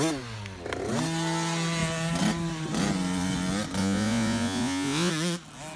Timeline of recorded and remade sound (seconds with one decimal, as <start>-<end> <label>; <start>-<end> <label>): 0.0-3.8 recorded; 3.8-5.1 remade; 5.1-5.8 recorded

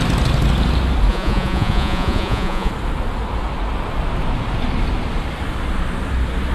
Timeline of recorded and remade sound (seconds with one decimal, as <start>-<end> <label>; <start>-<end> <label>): 0.0-1.1 recorded; 1.1-2.7 remade; 2.7-6.5 recorded

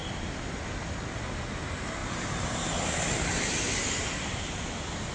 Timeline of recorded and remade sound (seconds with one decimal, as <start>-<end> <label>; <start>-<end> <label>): 0.0-0.9 remade; 0.9-2.0 recorded; 2.0-5.1 remade

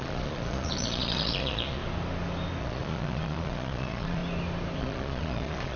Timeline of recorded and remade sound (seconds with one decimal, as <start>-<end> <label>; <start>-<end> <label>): 0.0-1.8 remade; 1.8-2.6 recorded; 2.6-4.2 remade; 4.2-4.8 recorded; 4.8-5.8 remade

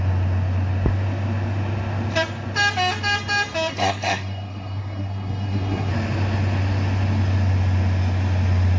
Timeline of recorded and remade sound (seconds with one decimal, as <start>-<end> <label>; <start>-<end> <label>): 0.0-3.7 recorded; 3.7-5.9 remade; 5.9-8.8 recorded